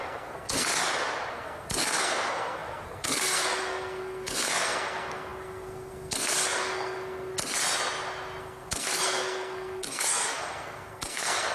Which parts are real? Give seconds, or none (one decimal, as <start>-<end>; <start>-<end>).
0.7-1.3; 7.3-8.4